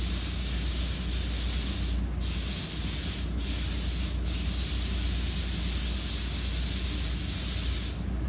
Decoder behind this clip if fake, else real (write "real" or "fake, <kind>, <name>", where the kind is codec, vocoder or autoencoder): real